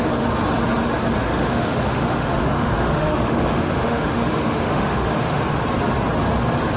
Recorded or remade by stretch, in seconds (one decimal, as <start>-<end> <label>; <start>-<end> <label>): 0.0-1.3 recorded; 1.3-5.4 remade; 5.4-6.8 recorded